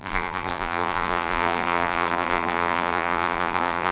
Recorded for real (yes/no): no